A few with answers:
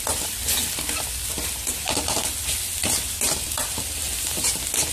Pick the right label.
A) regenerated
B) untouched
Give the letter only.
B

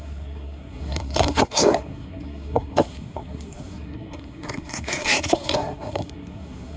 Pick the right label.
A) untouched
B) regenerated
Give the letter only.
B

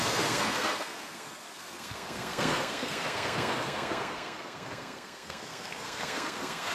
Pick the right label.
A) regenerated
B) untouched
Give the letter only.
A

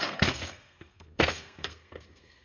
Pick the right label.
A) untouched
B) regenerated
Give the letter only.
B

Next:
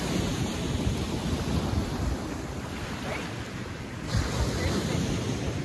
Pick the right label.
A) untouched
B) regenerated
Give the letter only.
A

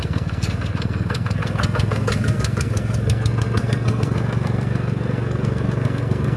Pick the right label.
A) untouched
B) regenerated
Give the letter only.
B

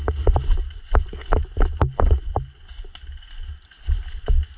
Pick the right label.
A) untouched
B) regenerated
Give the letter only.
A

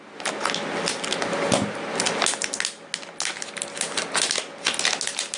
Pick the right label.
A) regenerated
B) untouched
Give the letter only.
B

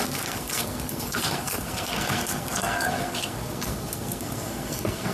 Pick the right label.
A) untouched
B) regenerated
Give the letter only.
B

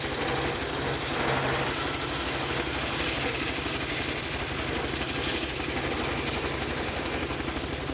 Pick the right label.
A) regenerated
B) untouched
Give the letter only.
B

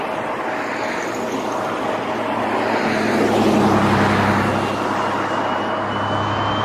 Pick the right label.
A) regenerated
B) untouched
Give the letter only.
B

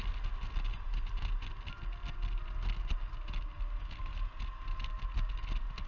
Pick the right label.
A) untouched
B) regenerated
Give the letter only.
A